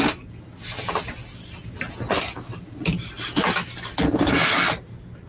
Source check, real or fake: real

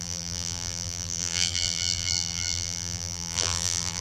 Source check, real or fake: fake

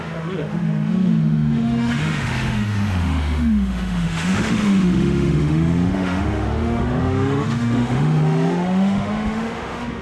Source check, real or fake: fake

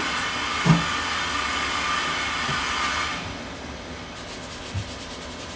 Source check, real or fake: real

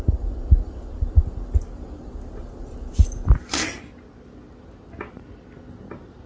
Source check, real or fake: real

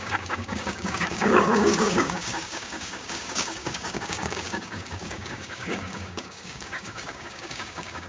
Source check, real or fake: fake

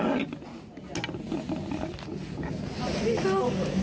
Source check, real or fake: real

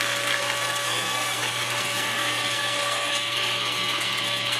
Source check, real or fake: fake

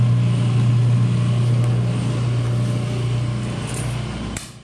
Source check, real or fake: real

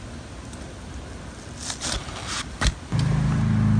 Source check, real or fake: real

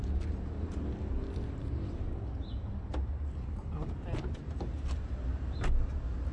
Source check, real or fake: real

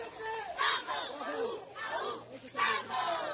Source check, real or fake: fake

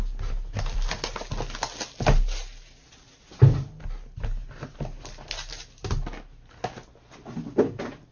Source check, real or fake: real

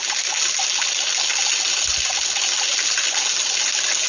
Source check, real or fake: real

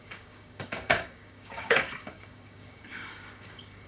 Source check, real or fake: fake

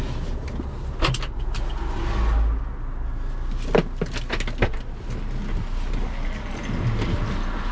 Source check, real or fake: real